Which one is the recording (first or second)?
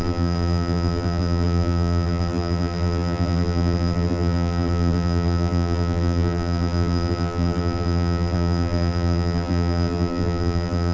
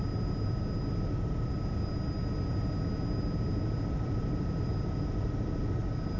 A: second